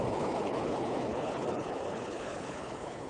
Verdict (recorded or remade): remade